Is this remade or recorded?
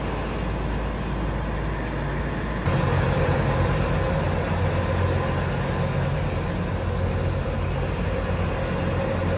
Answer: recorded